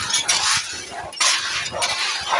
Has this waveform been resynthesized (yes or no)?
no